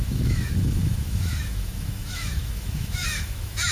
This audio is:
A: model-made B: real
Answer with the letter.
A